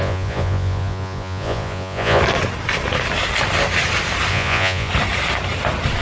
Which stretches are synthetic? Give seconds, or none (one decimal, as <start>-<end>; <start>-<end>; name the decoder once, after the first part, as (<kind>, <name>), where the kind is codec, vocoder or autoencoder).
0.0-2.2 (vocoder, Vocos); 4.3-4.9